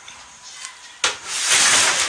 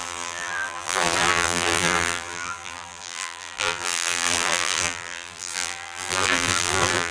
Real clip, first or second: first